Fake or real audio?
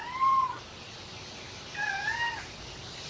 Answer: real